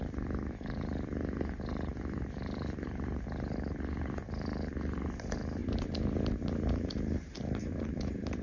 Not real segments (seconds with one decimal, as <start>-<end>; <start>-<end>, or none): 0.0-8.4